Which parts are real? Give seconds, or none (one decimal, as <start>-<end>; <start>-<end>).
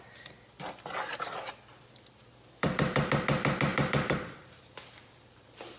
0.0-1.7; 3.0-3.7